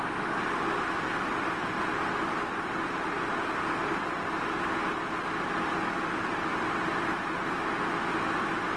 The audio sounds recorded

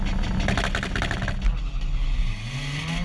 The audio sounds recorded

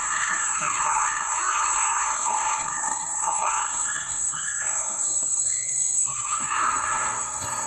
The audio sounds remade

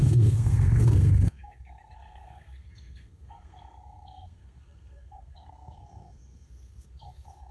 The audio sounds remade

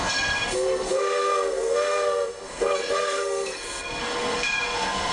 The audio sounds remade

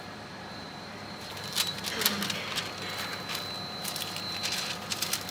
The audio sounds recorded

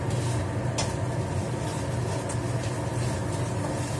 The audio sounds recorded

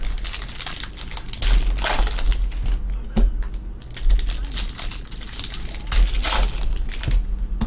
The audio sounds recorded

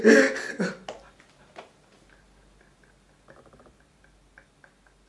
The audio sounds recorded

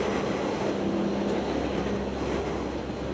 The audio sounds recorded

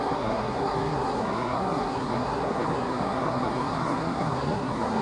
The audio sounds remade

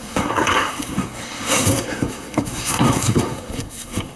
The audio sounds remade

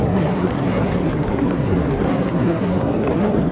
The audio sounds remade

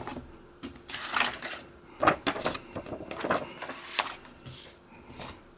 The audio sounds recorded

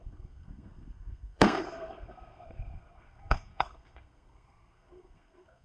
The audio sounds remade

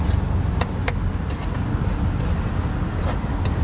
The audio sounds recorded